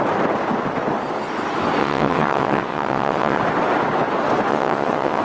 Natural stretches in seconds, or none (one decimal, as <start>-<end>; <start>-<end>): 0.0-1.8; 3.4-4.5